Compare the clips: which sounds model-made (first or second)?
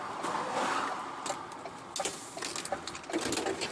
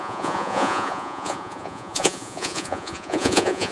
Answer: second